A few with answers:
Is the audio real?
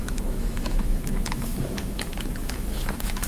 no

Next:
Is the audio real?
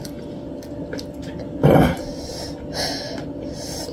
yes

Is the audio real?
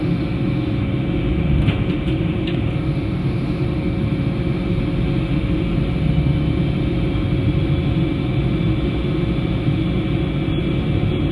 yes